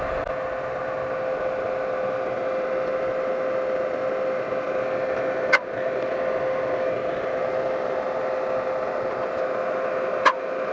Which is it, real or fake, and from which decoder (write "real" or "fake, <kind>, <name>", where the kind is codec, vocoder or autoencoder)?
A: real